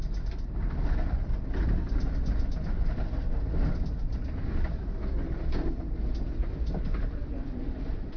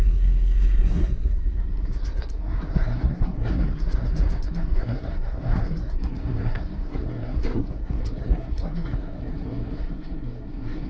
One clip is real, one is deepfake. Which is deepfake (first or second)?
second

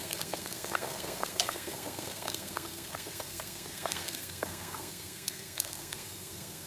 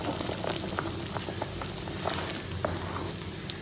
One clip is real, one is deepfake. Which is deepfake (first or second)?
first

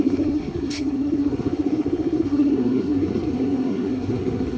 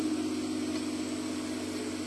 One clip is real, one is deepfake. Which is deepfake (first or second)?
first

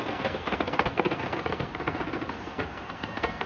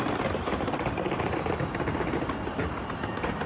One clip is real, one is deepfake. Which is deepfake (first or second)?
first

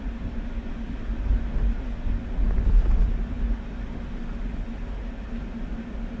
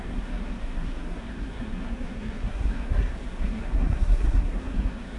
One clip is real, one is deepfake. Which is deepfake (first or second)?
second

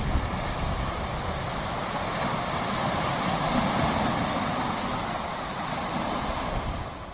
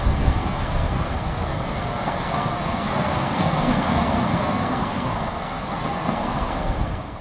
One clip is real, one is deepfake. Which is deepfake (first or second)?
second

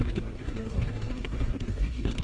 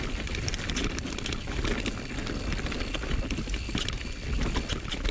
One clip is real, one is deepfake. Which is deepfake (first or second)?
first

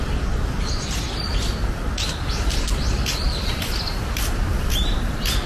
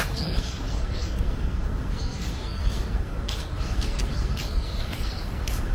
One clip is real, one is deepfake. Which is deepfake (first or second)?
second